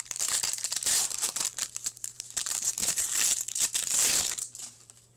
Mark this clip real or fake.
fake